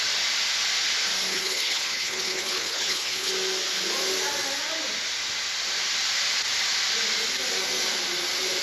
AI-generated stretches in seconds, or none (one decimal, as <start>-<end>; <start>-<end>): 1.3-3.3